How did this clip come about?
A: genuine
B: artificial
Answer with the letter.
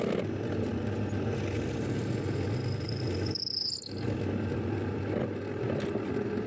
A